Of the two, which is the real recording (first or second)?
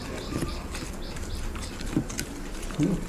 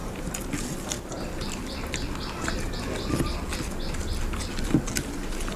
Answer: second